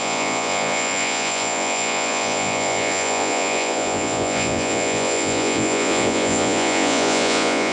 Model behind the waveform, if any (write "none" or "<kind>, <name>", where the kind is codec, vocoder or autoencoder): vocoder, Vocos